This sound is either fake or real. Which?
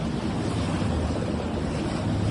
real